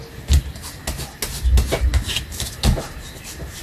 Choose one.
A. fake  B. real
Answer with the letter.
B